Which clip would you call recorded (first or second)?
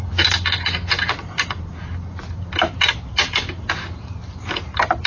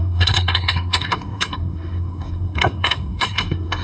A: first